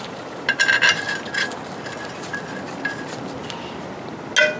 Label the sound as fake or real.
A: real